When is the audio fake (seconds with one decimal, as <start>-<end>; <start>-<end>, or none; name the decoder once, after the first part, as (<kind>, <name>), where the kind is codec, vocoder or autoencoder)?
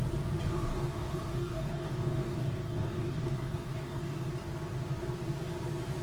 0.7-4.3 (codec, DAC)